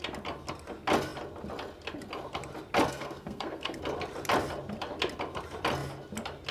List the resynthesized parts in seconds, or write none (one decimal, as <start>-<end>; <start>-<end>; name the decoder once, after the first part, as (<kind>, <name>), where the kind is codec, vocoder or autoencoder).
2.9-3.8 (codec, SNAC)